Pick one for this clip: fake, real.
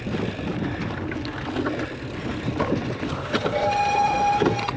real